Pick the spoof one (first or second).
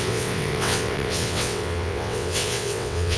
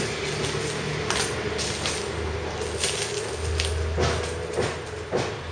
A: first